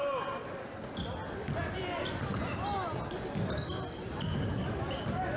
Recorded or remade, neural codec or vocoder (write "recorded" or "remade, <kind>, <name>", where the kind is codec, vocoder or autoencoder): recorded